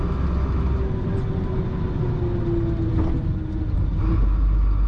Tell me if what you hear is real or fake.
real